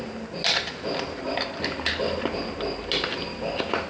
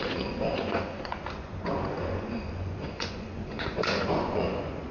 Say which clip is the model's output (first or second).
second